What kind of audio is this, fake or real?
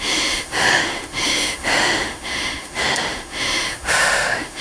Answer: fake